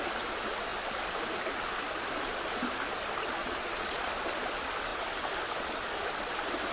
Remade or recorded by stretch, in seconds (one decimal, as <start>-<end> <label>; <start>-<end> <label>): 0.0-3.4 recorded; 3.4-4.1 remade; 4.1-6.7 recorded